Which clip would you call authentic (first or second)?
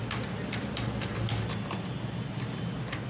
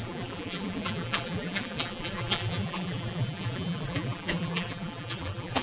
first